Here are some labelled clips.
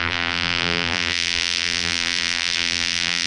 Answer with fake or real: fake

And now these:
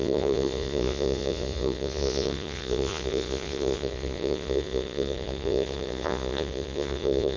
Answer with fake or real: fake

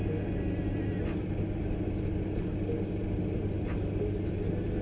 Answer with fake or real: real